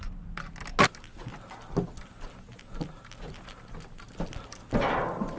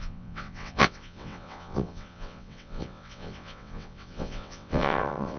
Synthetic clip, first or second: second